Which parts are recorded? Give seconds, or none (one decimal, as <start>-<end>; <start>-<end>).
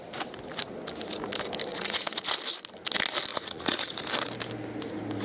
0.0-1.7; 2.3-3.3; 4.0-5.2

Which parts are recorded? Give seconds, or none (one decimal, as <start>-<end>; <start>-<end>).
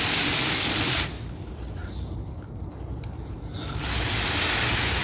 0.0-5.0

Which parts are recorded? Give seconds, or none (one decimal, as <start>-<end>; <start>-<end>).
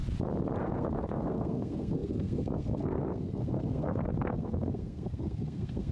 0.0-0.6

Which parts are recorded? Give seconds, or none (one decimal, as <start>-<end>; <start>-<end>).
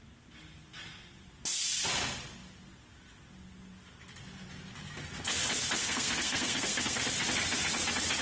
0.0-5.8; 7.0-8.2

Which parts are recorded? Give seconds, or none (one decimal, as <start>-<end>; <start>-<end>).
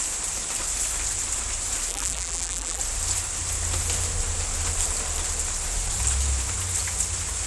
0.0-1.9; 2.8-7.5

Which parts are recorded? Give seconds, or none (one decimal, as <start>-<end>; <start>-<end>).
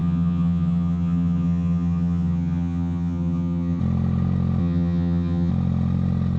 3.8-4.6; 5.5-6.4